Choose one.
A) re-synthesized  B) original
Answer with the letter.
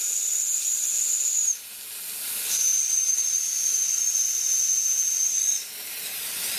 B